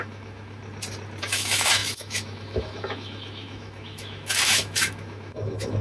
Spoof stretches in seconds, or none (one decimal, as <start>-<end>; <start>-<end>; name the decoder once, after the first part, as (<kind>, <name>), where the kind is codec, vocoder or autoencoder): 0.0-0.6 (autoencoder, DAC-VAE); 1.2-5.8